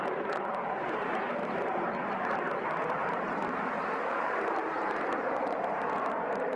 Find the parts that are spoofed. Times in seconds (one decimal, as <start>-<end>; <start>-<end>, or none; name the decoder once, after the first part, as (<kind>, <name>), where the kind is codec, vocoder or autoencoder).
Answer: 0.0-6.6 (vocoder, BigVGAN v2)